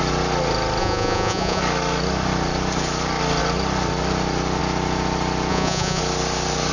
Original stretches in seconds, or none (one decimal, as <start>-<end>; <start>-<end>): 0.0-0.8; 1.6-5.5; 6.0-6.7

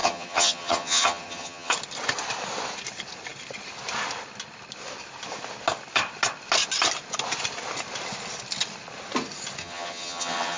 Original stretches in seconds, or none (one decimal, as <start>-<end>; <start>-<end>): 1.7-9.6

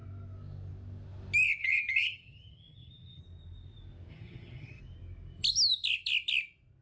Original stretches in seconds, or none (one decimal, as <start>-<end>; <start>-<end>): 0.0-1.6; 3.2-4.1; 4.8-6.8

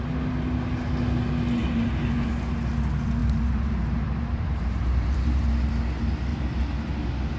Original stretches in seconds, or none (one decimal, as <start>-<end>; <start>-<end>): 0.0-1.6; 2.3-3.2; 5.7-6.3; 7.0-7.4

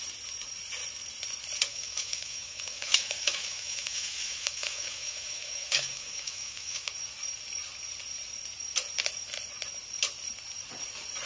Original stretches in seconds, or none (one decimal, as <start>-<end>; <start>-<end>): 0.0-1.7; 6.9-11.3

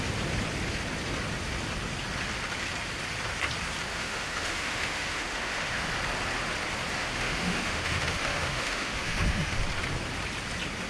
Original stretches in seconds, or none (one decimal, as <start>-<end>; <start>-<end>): 0.0-3.9; 5.9-7.0; 9.6-10.9